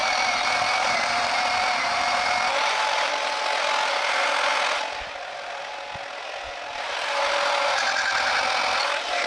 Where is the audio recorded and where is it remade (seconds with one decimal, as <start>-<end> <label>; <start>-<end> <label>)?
0.0-3.1 remade; 3.1-9.3 recorded